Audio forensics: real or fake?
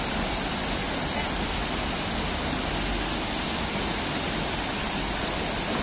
real